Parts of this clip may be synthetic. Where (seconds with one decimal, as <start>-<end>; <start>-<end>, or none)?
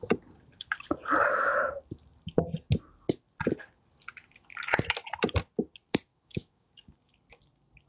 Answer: 6.1-6.7